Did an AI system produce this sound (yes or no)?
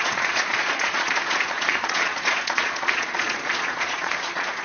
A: yes